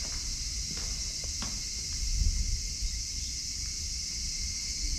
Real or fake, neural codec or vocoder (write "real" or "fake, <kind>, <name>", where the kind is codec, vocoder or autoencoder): real